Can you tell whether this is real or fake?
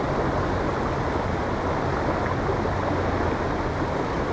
real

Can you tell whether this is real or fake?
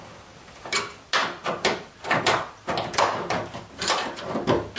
real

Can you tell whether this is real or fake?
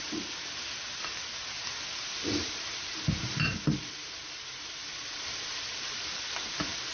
real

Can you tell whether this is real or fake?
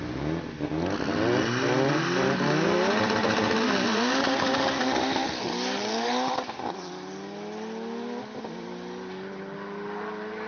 real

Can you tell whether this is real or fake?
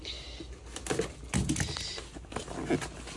real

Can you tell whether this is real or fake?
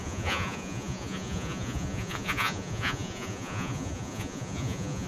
fake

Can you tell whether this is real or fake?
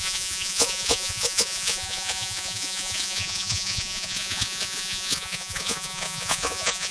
fake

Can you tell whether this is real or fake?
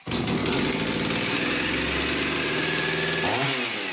real